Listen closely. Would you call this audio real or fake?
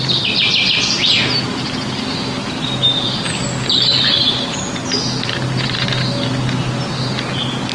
real